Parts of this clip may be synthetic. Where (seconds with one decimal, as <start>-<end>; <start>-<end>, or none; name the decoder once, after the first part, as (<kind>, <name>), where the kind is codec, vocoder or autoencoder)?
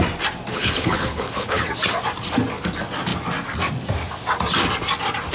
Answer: 0.5-1.6 (codec, HILCodec)